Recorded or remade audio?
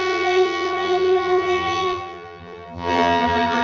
remade